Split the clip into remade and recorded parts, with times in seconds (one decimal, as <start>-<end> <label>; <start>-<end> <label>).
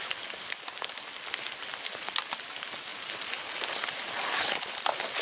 0.0-5.2 recorded